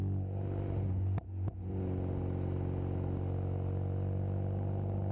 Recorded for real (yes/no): yes